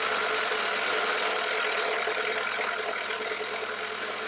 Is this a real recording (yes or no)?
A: yes